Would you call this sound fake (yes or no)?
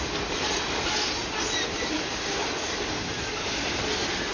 no